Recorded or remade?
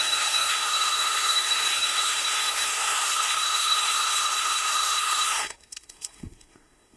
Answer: remade